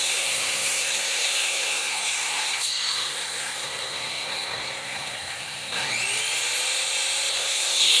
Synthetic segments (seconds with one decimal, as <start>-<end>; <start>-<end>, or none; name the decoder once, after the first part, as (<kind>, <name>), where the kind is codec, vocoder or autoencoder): 0.0-5.9 (codec, SNAC); 7.3-8.0